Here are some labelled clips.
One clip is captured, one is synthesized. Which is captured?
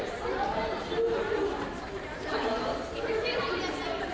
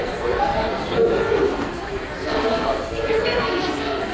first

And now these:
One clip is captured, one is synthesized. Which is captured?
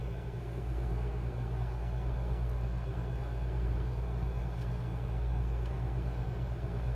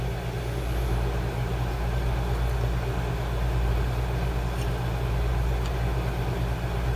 second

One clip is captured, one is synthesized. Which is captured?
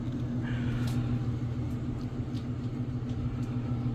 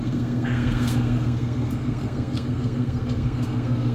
first